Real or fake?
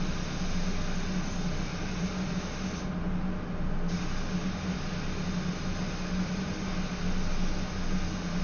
real